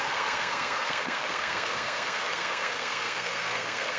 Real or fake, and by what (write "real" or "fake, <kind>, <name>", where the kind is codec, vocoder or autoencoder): fake, codec, SNAC